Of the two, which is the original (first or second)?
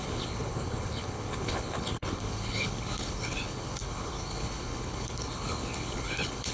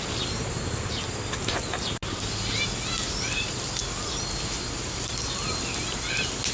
second